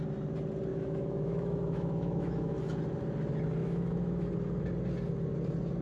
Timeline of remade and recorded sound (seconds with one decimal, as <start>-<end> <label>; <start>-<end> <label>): 0.0-0.7 recorded; 0.7-2.6 remade; 2.6-3.6 recorded; 3.6-4.3 remade; 4.3-5.8 recorded